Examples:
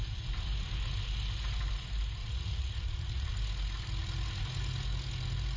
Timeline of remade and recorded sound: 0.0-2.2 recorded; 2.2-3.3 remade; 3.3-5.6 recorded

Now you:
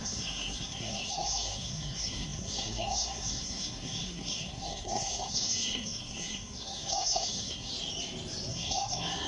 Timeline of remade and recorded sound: 0.0-7.7 remade; 7.7-8.5 recorded; 8.5-9.3 remade

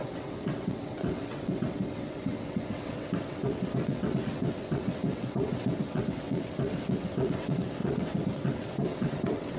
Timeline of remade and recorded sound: 0.0-9.6 remade

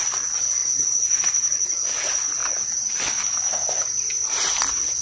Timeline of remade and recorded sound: 0.0-3.8 recorded; 3.8-5.0 remade

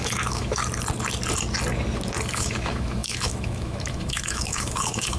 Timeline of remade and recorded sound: 0.0-0.6 remade; 0.6-2.3 recorded; 2.3-5.2 remade

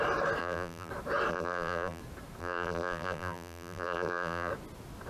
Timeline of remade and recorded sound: 0.0-0.4 recorded; 0.4-0.9 remade; 0.9-1.3 recorded; 1.3-2.0 remade; 2.0-2.4 recorded; 2.4-4.5 remade; 4.5-5.1 recorded

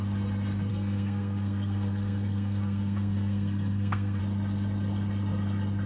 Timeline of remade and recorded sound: 0.0-0.7 recorded; 0.7-4.2 remade; 4.2-5.9 recorded

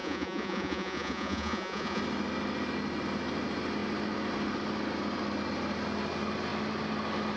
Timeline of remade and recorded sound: 0.0-2.0 remade; 2.0-7.4 recorded